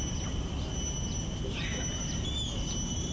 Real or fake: real